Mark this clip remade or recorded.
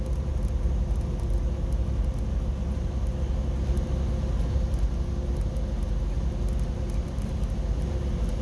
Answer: recorded